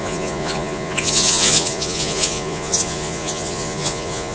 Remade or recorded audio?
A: remade